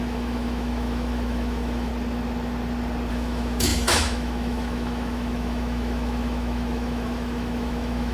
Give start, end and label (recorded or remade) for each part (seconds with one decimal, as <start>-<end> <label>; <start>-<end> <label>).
0.0-1.9 remade; 1.9-3.1 recorded; 3.1-8.1 remade